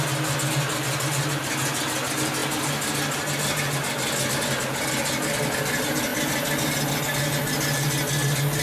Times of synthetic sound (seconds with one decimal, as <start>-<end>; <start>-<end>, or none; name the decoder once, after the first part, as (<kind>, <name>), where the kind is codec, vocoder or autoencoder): none